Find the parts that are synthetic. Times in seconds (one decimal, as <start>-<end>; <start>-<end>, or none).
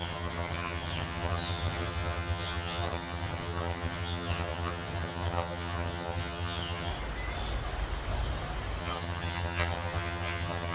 0.0-6.9; 8.8-10.7